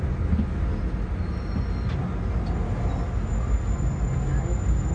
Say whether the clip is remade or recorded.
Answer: recorded